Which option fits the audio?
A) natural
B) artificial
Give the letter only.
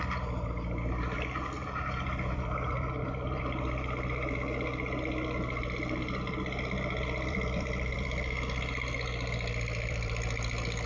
B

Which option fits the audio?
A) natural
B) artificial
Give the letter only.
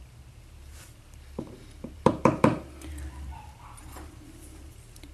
B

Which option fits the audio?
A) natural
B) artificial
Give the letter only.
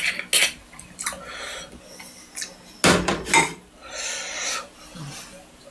A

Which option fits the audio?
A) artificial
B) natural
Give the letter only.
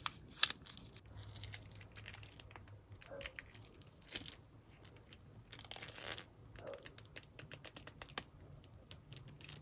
B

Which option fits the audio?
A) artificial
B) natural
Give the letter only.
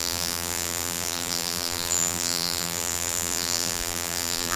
A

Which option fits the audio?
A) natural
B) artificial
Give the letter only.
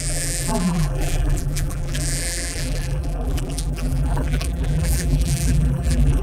B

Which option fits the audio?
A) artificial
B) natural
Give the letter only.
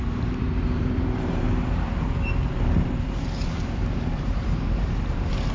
A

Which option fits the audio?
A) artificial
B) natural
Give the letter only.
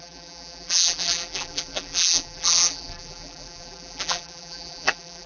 A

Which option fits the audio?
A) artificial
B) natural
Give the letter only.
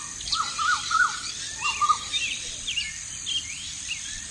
A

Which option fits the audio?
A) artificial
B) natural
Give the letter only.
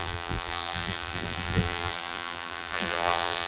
A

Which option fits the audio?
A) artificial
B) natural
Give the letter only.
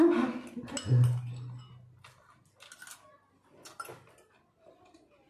B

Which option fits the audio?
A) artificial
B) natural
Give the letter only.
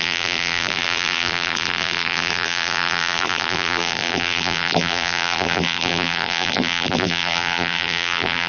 A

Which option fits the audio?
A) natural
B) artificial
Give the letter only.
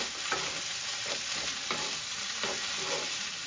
B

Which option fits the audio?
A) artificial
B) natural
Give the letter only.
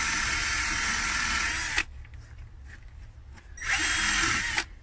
B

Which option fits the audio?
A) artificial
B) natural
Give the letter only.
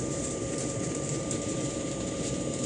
A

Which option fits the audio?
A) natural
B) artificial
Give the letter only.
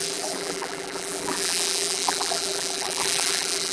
B